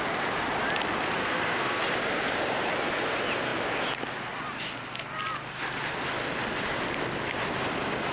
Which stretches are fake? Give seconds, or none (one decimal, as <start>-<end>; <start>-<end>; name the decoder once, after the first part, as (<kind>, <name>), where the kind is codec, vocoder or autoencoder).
1.2-1.8 (codec, SNAC)